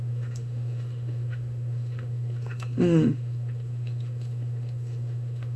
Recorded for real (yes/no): no